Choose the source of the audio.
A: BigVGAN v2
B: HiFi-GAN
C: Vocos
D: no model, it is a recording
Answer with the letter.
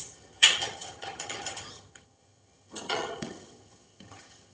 B